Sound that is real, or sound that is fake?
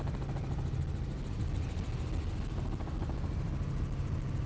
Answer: real